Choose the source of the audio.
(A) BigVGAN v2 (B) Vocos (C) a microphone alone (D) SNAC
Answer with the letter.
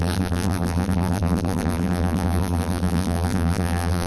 A